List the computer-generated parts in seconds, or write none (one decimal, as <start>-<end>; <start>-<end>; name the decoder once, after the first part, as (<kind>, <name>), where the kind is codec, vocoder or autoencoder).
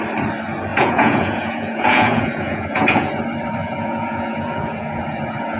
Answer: 0.7-3.2 (vocoder, Vocos); 3.6-5.6